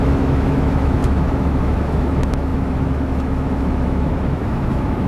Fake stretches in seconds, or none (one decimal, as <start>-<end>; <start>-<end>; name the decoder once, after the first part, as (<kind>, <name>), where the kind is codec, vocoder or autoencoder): 0.0-5.1 (autoencoder, DAC-VAE)